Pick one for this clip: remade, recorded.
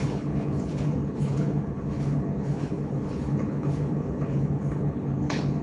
remade